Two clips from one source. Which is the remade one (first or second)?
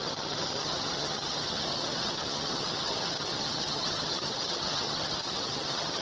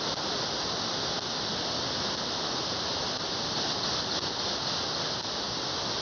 first